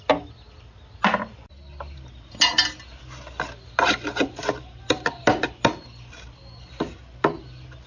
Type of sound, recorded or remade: recorded